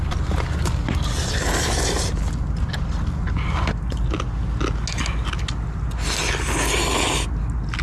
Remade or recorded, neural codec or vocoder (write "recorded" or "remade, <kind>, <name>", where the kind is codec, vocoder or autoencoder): recorded